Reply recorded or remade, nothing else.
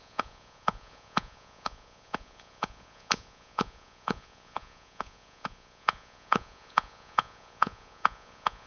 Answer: remade